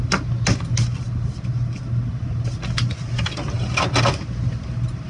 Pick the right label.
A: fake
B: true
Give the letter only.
B